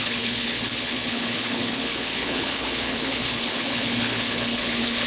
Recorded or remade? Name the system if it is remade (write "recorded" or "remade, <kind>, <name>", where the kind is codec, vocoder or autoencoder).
remade, codec, HILCodec